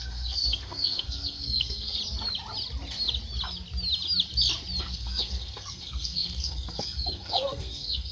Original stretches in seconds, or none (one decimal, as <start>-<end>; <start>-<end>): 2.0-4.8